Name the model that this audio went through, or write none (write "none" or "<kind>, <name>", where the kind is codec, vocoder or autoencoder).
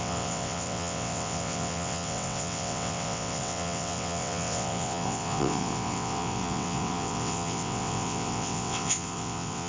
vocoder, WaveNeXt